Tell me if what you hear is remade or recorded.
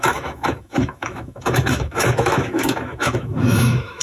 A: remade